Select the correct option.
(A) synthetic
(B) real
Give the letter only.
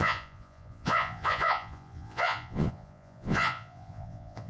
A